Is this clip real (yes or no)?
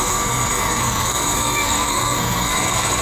no